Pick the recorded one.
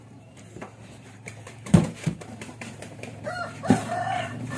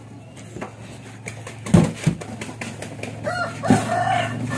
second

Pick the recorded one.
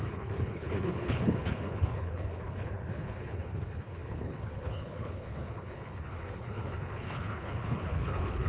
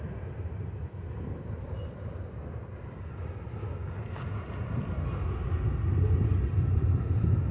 second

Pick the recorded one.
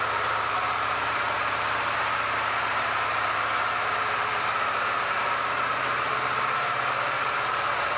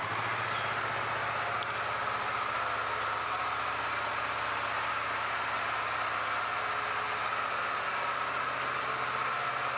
second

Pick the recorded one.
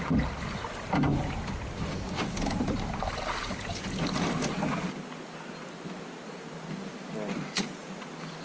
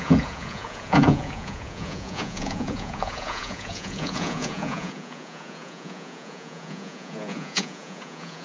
first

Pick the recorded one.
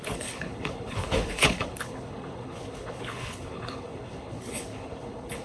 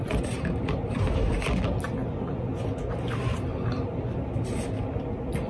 second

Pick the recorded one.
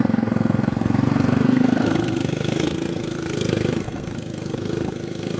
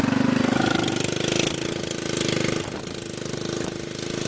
second